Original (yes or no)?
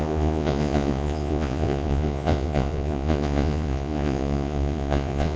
no